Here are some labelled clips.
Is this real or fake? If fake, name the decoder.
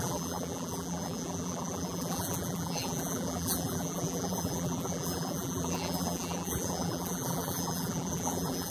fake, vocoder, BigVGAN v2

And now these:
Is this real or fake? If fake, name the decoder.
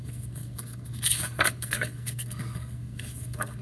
fake, codec, SNAC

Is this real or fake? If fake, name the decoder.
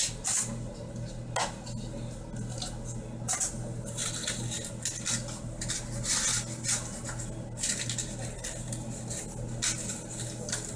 real